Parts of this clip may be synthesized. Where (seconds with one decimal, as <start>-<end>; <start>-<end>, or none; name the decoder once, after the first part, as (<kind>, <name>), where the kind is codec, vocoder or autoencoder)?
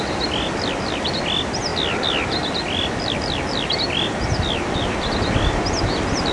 none